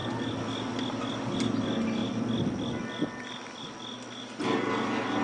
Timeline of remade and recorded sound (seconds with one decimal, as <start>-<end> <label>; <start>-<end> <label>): 0.0-5.2 recorded